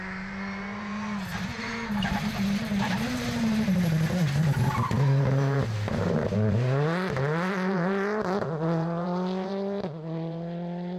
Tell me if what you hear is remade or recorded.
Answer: remade